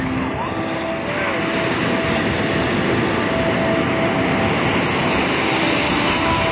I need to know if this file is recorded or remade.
recorded